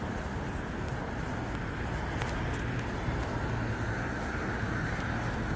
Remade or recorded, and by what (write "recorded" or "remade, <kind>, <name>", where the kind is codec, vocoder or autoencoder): recorded